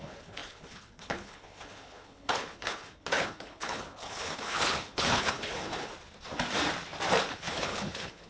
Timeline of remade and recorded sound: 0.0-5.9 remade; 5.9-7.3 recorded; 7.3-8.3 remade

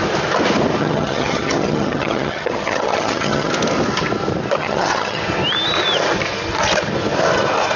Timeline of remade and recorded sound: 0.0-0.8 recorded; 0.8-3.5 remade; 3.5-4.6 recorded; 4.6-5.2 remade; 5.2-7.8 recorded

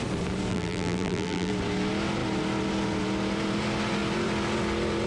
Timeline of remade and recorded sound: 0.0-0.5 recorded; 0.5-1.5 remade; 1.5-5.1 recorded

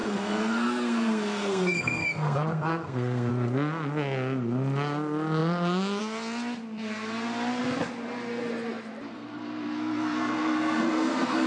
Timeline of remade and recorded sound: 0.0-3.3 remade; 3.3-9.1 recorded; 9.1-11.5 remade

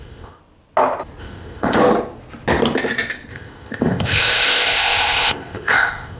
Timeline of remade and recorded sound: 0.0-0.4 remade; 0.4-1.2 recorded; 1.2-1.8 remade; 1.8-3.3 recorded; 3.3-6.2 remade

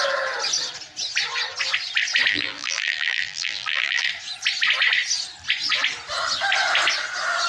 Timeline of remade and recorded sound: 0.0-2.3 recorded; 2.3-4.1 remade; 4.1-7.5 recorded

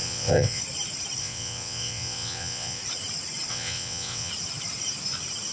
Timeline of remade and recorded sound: 0.0-0.6 remade; 0.6-1.2 recorded; 1.2-2.8 remade; 2.8-3.5 recorded; 3.5-4.3 remade; 4.3-5.5 recorded